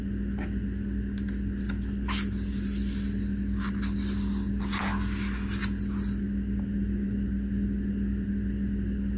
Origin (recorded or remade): recorded